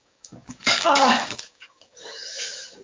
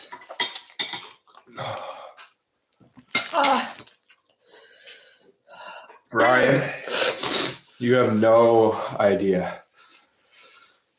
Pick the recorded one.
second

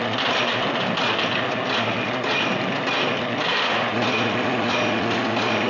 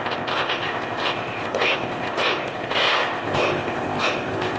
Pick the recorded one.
first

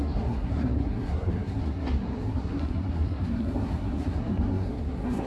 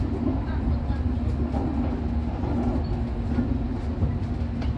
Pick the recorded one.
second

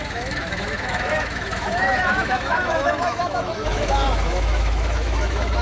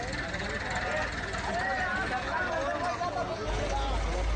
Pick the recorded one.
second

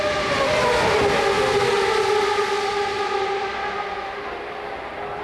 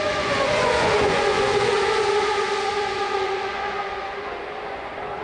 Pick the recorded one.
first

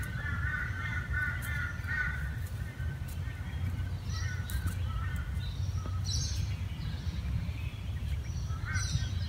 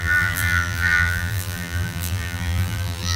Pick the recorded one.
first